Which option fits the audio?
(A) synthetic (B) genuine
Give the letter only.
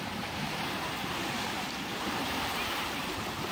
A